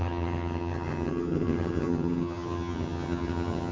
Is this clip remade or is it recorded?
remade